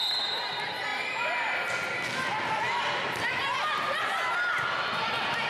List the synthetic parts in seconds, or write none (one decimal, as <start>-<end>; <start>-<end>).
none